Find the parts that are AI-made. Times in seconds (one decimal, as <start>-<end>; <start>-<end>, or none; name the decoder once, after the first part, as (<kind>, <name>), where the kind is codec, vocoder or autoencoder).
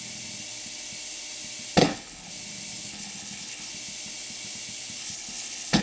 1.8-2.3 (codec, HILCodec); 2.9-3.7; 5.0-5.8